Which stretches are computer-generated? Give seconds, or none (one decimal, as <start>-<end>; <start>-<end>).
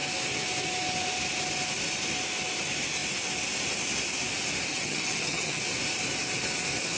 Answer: 4.7-5.6